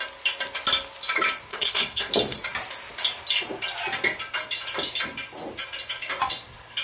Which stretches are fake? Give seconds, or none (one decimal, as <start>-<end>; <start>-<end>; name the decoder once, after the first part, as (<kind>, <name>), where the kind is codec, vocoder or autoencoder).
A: 1.5-2.1 (codec, SNAC)